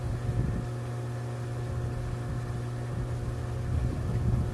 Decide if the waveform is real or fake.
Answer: real